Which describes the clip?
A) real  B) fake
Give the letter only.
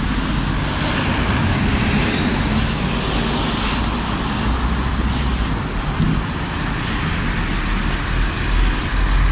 A